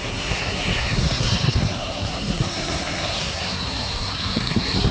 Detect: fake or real fake